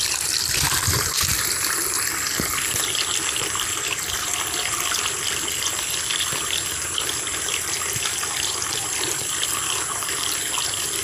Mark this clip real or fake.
real